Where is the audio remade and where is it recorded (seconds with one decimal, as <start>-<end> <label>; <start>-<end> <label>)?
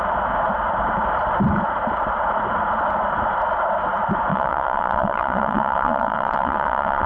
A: 0.0-4.3 recorded; 4.3-7.1 remade